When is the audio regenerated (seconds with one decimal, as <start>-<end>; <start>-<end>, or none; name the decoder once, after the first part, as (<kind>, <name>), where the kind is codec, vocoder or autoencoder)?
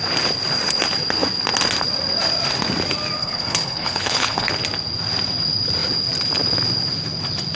3.2-4.5 (codec, HILCodec)